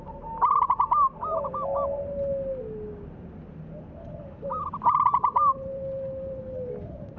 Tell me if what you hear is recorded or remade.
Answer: recorded